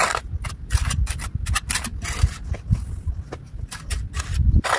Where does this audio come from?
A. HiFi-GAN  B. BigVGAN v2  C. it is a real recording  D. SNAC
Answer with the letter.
C